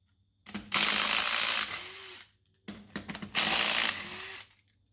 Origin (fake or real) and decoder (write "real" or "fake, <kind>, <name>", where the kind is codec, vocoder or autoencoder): real